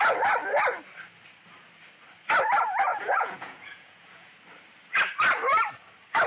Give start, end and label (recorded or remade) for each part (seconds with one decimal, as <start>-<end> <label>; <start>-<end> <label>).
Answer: 0.0-2.9 recorded; 2.9-4.3 remade; 4.3-6.3 recorded